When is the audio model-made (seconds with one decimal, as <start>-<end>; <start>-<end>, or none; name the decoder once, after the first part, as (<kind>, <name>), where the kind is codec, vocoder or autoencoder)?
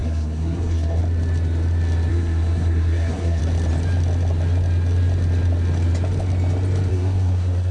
0.0-1.0 (codec, SNAC); 2.1-3.4; 6.9-7.7